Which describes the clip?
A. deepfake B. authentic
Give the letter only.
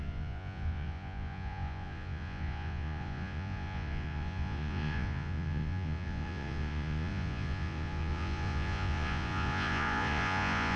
A